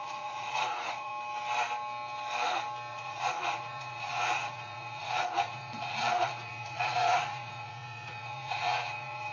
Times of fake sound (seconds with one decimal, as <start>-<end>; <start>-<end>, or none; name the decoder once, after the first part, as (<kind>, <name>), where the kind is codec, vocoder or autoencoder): 0.0-1.1 (vocoder, Vocos); 2.9-9.3